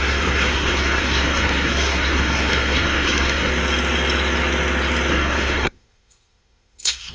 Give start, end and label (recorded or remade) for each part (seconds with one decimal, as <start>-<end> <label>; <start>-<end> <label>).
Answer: 0.0-3.5 remade; 3.5-5.1 recorded; 5.1-7.1 remade